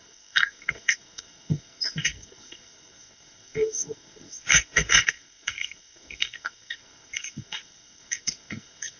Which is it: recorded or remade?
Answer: remade